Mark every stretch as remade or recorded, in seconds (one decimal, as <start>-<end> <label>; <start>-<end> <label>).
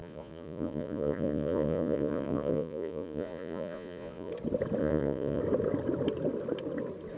0.0-4.3 remade; 4.3-4.8 recorded; 4.8-5.4 remade; 5.4-7.2 recorded